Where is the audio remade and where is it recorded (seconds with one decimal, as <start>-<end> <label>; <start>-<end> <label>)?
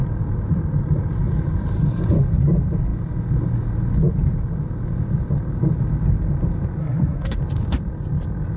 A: 0.0-6.8 recorded; 6.8-7.4 remade; 7.4-8.6 recorded